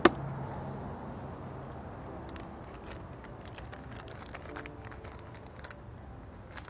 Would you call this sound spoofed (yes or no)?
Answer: no